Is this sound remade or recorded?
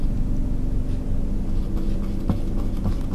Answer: recorded